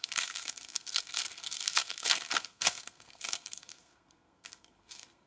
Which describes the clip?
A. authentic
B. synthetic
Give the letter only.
B